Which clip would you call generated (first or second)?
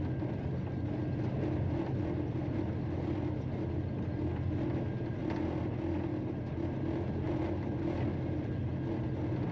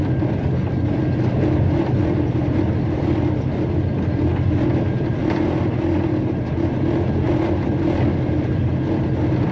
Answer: second